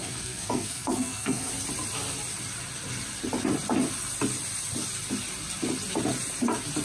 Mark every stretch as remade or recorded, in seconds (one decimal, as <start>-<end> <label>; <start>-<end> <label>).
0.0-1.5 remade; 1.5-6.8 recorded